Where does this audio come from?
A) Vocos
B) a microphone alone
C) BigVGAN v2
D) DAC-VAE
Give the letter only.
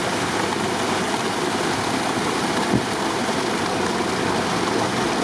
B